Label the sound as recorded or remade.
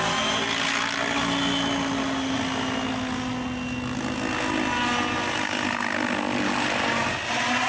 recorded